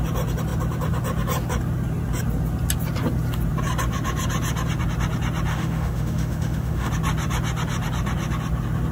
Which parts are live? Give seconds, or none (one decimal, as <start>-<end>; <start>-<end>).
0.0-5.5; 6.9-8.9